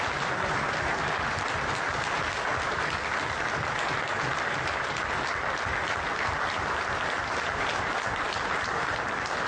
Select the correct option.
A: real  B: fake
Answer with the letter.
A